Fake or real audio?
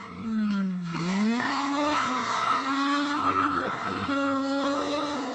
fake